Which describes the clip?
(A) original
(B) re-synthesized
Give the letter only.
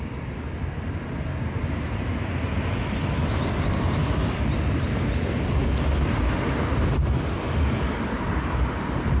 B